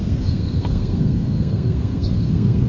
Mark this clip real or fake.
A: fake